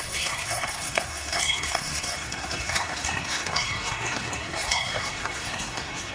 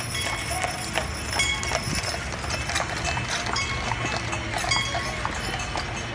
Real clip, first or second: second